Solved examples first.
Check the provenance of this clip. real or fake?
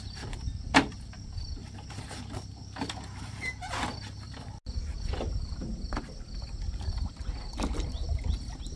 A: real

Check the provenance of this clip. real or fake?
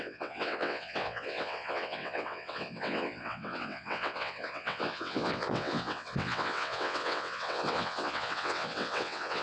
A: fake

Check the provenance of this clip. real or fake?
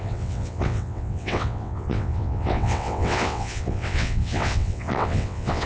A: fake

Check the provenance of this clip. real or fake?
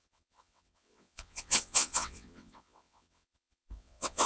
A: fake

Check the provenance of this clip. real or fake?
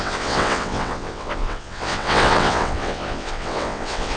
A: fake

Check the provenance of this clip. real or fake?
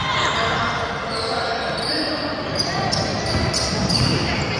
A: real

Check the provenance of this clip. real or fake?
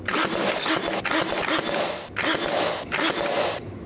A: real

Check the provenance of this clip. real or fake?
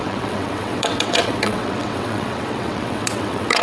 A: fake